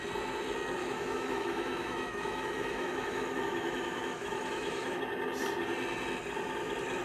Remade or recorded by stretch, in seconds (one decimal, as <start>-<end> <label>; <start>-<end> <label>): 0.0-0.8 recorded; 0.8-5.0 remade; 5.0-7.0 recorded